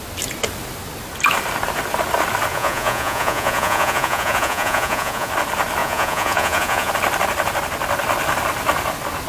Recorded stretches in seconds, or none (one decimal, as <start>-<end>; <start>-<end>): 0.0-2.5; 5.3-5.8; 6.9-9.3